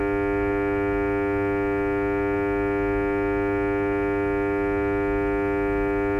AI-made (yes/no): no